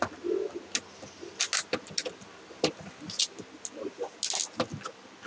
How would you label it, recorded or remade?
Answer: recorded